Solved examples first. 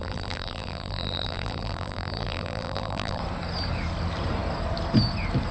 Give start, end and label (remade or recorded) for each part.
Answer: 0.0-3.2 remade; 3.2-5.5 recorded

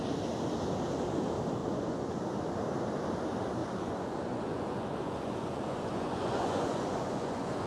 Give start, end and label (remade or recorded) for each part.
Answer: 0.0-1.6 recorded; 1.6-2.2 remade; 2.2-3.6 recorded; 3.6-7.7 remade

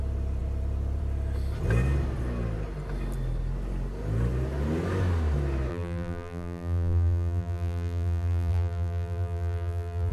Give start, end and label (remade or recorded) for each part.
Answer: 0.0-5.7 recorded; 5.7-10.1 remade

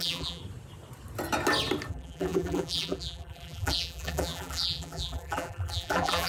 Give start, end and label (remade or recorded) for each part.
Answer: 0.0-0.4 remade; 0.4-1.9 recorded; 1.9-6.3 remade

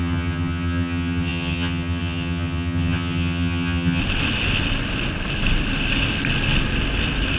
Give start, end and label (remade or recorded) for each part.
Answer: 0.0-4.0 remade; 4.0-7.4 recorded